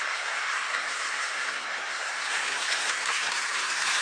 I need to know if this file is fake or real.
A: fake